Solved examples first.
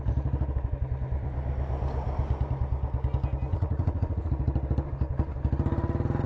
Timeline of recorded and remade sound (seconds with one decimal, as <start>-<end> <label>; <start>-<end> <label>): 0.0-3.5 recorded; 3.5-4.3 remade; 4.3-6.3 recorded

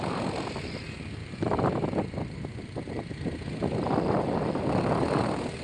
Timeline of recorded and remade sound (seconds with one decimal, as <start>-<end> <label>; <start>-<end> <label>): 0.0-5.6 recorded

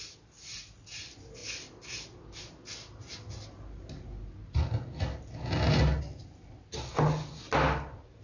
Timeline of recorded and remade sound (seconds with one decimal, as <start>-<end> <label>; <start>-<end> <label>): 0.0-8.2 recorded

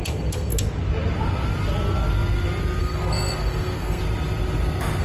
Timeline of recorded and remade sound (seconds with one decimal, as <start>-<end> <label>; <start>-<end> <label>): 0.0-0.5 remade; 0.5-2.8 recorded; 2.8-4.0 remade; 4.0-5.0 recorded

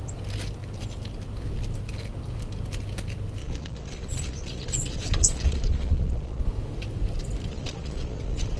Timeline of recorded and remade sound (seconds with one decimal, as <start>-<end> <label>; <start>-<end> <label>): 0.0-3.4 recorded; 3.4-6.4 remade; 6.4-7.5 recorded; 7.5-8.6 remade

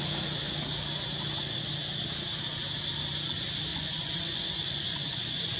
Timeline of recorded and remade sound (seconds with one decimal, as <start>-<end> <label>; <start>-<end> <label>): 0.0-3.7 recorded; 3.7-5.6 remade

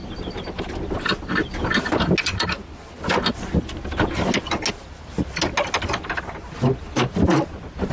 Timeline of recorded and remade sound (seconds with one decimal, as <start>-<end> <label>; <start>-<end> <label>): 0.0-7.9 recorded